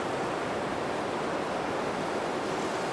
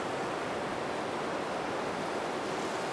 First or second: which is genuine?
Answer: second